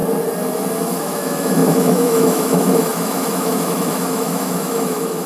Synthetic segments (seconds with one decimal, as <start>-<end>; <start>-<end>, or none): 0.8-5.3